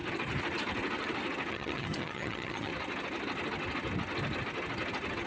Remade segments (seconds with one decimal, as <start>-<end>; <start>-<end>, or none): 1.5-2.7